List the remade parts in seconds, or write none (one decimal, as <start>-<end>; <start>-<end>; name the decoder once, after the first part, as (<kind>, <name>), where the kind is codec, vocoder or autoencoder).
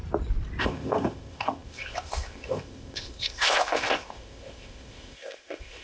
0.6-5.8 (codec, ZipCodec)